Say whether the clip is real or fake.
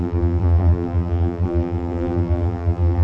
fake